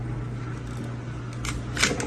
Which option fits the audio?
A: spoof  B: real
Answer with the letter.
B